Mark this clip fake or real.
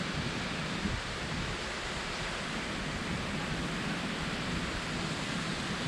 real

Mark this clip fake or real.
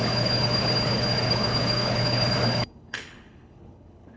fake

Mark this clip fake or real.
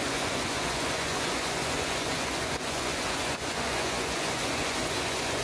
fake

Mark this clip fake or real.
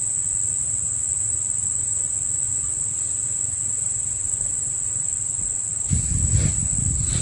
real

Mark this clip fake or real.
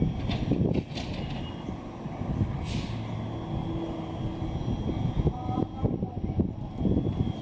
real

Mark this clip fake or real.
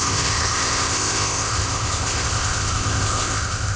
fake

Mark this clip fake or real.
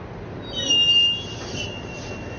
real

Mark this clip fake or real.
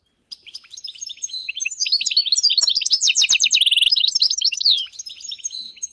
fake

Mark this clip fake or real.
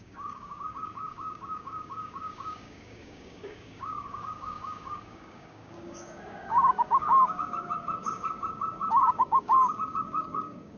fake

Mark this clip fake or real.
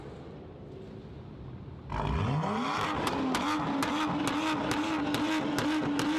real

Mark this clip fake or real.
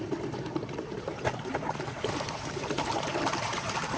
real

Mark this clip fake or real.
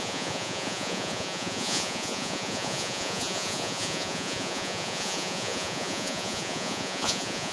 fake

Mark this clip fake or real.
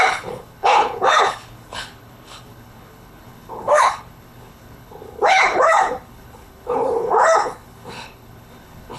fake